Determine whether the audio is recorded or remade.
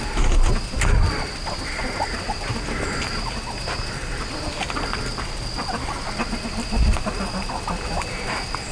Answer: recorded